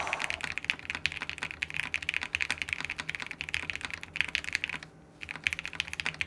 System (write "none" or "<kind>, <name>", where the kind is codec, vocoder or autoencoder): none